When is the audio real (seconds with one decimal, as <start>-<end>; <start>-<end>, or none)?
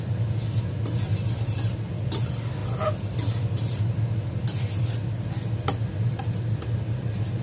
0.0-7.4